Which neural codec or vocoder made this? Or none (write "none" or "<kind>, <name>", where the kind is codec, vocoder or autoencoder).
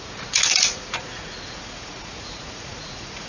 vocoder, Vocos